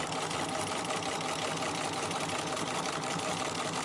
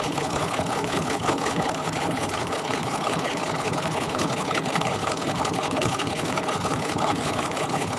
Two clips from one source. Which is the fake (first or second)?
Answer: second